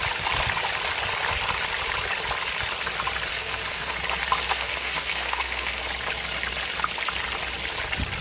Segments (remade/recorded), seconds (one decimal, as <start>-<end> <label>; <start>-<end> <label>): 0.0-3.3 recorded; 3.3-3.9 remade; 3.9-4.5 recorded; 4.5-5.8 remade; 5.8-8.2 recorded